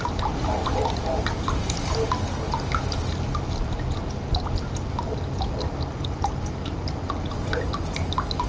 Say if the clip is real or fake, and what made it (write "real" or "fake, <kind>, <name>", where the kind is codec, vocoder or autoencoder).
real